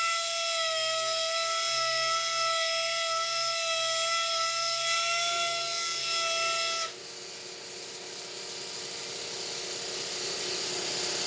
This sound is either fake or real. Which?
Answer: real